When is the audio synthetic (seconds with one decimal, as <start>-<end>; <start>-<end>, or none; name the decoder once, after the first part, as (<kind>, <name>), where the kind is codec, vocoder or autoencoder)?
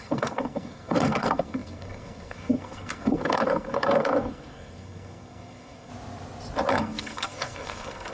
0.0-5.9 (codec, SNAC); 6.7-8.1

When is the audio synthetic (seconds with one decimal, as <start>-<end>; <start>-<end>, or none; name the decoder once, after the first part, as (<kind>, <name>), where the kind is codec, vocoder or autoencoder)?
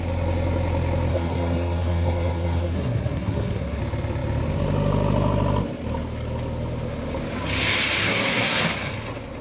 1.1-3.8 (codec, SNAC); 8.0-8.6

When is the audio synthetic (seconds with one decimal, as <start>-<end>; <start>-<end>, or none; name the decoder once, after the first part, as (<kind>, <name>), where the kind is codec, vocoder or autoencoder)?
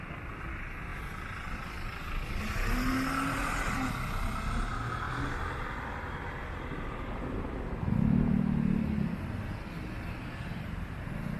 none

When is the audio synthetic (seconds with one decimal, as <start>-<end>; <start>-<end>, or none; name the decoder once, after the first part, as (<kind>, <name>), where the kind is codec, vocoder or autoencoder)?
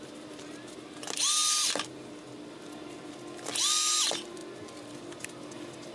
none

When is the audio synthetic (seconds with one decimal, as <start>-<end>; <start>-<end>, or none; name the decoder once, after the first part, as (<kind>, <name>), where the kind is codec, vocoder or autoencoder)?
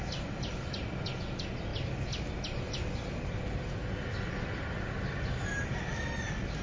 none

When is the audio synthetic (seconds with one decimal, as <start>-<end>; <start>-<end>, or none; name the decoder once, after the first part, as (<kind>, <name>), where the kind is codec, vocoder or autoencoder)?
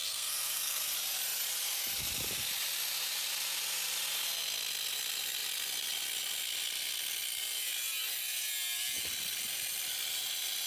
0.0-0.8 (codec, SNAC)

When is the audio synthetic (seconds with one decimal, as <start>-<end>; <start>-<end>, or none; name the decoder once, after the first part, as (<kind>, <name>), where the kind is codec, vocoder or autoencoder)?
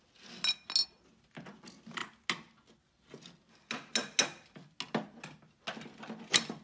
none